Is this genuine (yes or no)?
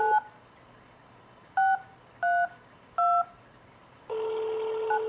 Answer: yes